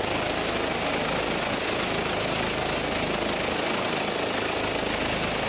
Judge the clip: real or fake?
real